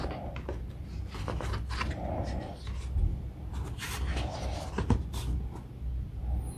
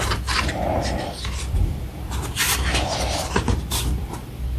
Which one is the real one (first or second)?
first